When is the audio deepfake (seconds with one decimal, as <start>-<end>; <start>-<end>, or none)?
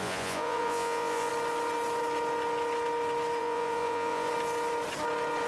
0.0-1.3; 3.4-4.3